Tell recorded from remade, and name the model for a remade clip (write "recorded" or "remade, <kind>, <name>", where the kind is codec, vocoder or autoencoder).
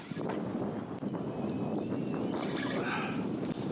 recorded